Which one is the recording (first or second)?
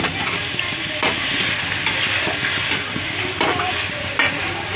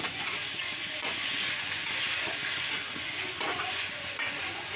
first